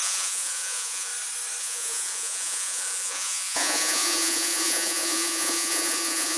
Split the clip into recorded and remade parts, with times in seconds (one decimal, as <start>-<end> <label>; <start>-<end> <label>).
0.0-1.1 remade; 1.1-1.6 recorded; 1.6-6.4 remade